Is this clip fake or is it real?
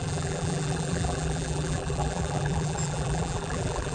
fake